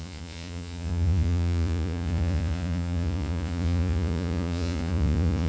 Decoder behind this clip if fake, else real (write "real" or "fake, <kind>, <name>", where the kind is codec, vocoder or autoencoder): fake, vocoder, Vocos